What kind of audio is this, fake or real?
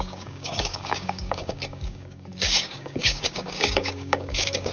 fake